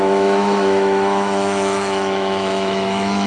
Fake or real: fake